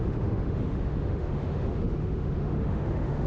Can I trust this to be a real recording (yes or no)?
no